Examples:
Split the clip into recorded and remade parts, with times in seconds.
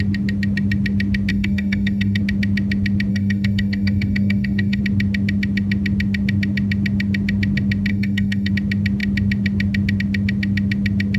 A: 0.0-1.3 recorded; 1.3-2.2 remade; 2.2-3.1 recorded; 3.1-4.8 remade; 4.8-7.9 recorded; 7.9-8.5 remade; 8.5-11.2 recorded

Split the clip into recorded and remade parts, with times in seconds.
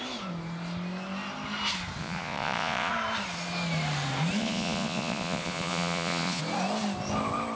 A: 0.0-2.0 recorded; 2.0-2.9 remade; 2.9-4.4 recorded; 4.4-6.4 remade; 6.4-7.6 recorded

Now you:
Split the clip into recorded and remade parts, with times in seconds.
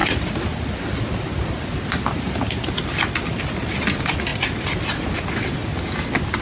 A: 0.0-6.4 recorded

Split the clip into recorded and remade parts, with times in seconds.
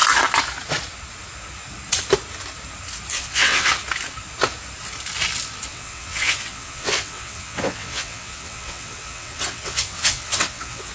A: 0.0-3.1 recorded; 3.1-3.7 remade; 3.7-5.7 recorded; 5.7-10.9 remade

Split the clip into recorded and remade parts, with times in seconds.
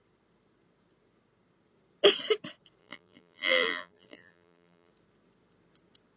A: 0.0-2.8 recorded; 2.8-4.9 remade; 4.9-6.2 recorded